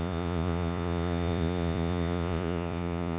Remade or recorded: remade